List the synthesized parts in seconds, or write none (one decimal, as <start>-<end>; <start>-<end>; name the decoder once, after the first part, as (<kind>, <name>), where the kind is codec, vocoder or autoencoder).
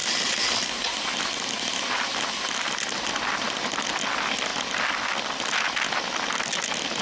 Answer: 0.0-0.7 (vocoder, BigVGAN v2)